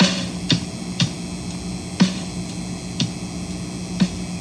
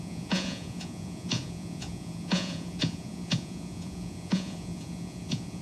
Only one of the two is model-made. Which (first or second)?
second